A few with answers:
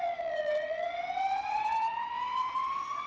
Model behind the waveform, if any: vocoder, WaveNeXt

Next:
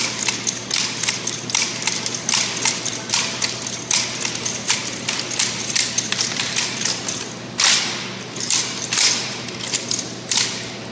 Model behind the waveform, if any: none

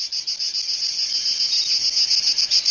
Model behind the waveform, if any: none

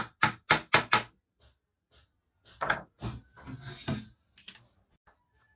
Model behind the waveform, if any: none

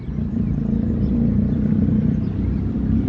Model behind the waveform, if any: vocoder, BigVGAN v2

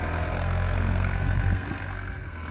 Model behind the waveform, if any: codec, SNAC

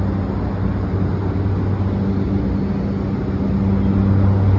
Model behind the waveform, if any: none